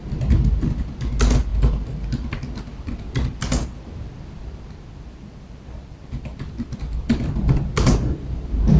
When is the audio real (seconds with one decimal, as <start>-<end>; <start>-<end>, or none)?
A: 0.0-8.8